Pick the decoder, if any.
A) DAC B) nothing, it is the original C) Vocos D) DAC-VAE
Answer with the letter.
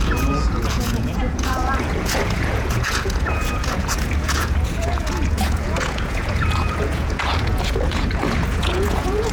C